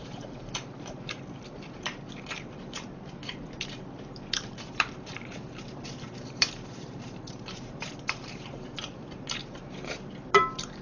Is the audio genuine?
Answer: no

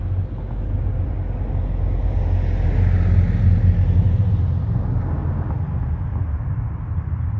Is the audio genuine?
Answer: yes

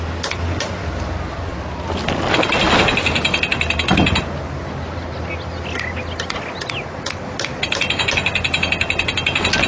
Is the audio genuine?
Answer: yes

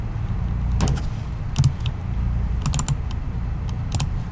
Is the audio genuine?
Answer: yes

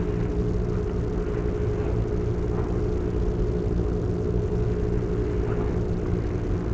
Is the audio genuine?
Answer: yes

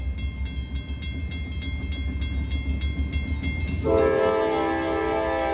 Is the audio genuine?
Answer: yes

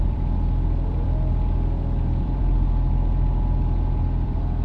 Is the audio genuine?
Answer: no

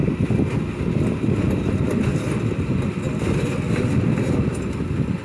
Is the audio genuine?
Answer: yes